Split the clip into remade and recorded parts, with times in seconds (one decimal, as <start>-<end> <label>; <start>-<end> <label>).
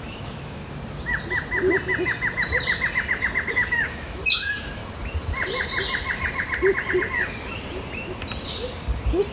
0.0-0.6 remade; 0.6-3.5 recorded; 3.5-4.8 remade; 4.8-9.3 recorded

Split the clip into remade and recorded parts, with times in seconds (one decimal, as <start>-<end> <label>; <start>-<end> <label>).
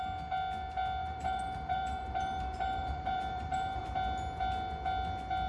0.0-1.0 recorded; 1.0-3.8 remade; 3.8-5.5 recorded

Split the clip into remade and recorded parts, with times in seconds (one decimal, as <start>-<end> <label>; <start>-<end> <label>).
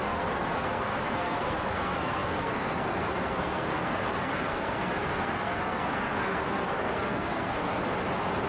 0.0-7.8 remade; 7.8-8.5 recorded